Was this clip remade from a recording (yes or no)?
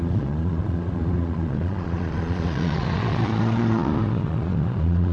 yes